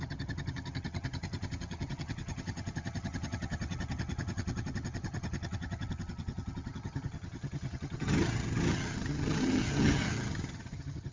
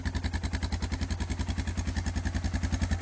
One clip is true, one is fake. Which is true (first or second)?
second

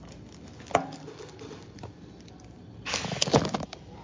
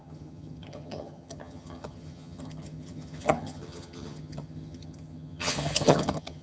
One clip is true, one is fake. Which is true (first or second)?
first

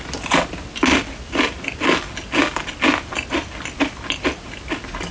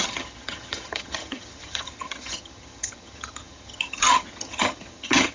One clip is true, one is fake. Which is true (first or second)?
first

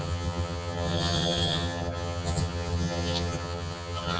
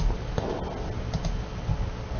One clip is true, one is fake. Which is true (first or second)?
second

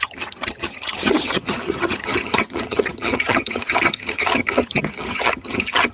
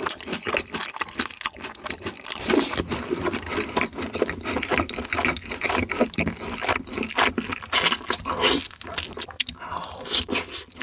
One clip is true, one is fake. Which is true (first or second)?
second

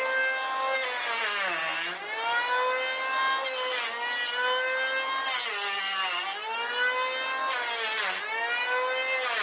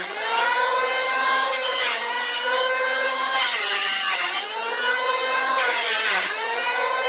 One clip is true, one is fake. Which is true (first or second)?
first